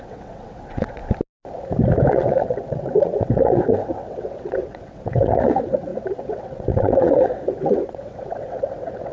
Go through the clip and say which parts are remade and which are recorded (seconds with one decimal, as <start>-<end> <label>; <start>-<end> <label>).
0.0-1.0 remade; 1.0-2.1 recorded; 2.1-9.1 remade